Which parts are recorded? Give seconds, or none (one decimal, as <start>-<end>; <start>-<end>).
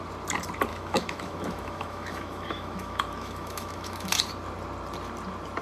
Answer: 0.0-0.7; 4.1-5.6